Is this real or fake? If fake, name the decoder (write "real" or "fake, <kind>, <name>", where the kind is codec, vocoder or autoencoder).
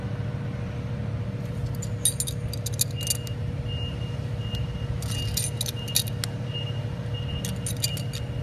real